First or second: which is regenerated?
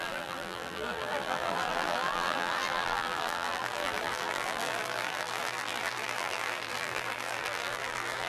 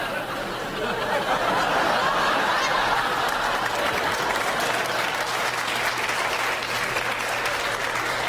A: first